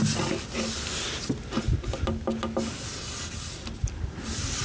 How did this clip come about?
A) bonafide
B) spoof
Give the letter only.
A